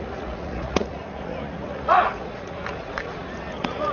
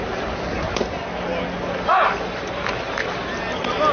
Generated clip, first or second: first